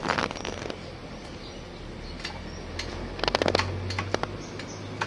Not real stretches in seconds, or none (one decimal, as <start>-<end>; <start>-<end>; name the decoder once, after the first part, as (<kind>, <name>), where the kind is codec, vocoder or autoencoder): none